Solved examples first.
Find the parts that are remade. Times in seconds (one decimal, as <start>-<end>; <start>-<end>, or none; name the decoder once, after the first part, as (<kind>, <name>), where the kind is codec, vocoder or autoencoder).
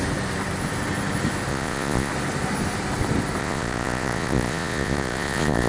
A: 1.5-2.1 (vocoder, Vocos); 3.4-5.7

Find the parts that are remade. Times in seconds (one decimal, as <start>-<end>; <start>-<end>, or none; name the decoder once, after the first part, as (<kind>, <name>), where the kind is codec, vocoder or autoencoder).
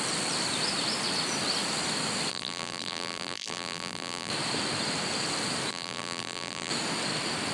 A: 2.3-4.3 (vocoder, BigVGAN v2); 5.7-6.7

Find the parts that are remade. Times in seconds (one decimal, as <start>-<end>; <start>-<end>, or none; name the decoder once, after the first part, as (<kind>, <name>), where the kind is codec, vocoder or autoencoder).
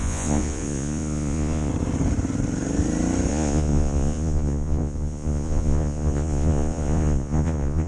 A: 0.0-1.7 (vocoder, Vocos); 3.3-7.9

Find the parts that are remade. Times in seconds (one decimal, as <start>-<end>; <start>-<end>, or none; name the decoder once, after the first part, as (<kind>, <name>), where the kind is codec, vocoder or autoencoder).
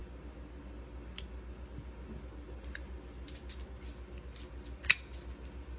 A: none